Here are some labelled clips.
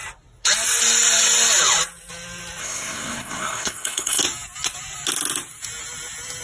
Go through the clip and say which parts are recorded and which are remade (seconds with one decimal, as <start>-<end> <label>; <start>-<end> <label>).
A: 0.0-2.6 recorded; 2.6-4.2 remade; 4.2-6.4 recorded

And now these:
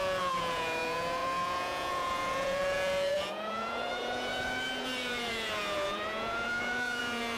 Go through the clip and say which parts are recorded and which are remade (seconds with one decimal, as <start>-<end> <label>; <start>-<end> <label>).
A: 0.0-7.4 remade

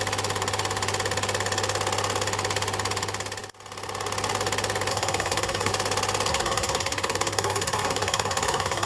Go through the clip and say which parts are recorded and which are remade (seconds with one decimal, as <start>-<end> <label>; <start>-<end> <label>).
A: 0.0-4.9 recorded; 4.9-5.7 remade; 5.7-6.3 recorded; 6.3-8.9 remade